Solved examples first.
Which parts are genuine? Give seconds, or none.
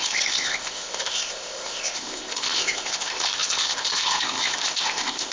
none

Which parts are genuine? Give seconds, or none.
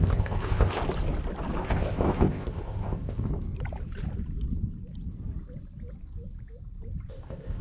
0.8-1.6; 3.3-7.1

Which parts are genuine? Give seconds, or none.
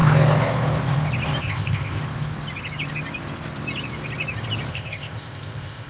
0.0-1.4; 2.0-4.7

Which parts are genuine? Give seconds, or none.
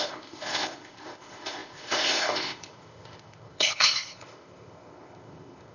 none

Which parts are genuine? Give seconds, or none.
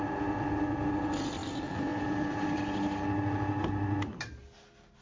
0.0-5.0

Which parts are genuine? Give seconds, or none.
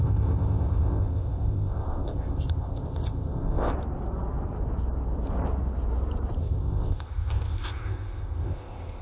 3.7-6.4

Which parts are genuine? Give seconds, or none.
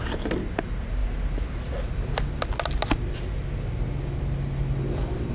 0.0-5.3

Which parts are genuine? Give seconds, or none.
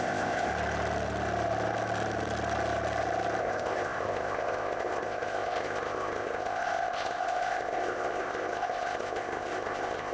0.5-3.4